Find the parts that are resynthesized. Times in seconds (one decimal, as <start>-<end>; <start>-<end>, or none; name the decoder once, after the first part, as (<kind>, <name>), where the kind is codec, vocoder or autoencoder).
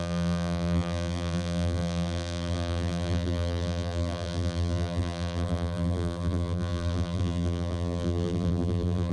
0.0-9.1 (vocoder, BigVGAN v2)